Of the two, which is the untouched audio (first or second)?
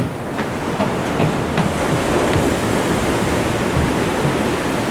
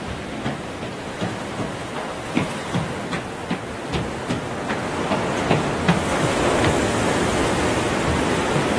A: second